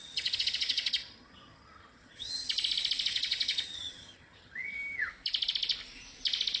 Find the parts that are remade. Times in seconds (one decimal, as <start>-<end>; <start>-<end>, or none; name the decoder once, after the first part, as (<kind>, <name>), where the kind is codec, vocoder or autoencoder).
0.0-2.5 (vocoder, HiFi-GAN); 3.1-5.1